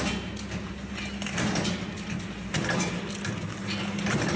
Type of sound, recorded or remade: recorded